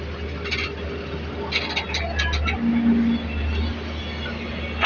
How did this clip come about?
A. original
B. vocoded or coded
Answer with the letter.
A